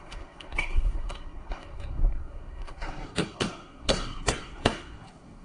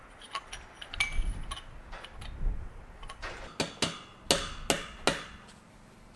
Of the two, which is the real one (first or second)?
second